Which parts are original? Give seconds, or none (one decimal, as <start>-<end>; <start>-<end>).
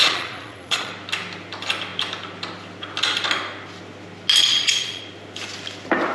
0.9-4.4; 5.0-6.1